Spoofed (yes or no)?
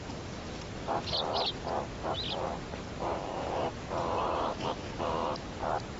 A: no